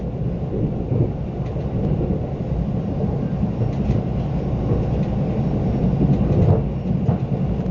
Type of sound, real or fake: real